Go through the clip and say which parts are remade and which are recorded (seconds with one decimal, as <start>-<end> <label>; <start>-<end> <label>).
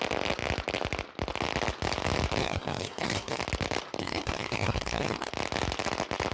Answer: 0.0-2.4 recorded; 2.4-3.4 remade; 3.4-4.0 recorded; 4.0-5.3 remade; 5.3-6.3 recorded